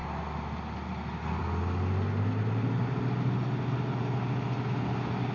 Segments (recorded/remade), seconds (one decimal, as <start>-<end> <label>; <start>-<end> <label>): 0.0-5.3 recorded